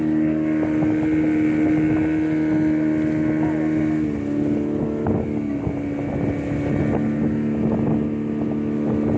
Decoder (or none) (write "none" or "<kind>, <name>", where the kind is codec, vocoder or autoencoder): none